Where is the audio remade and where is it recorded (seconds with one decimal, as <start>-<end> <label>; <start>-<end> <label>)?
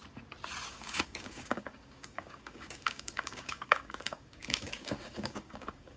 0.0-0.7 recorded; 0.7-6.0 remade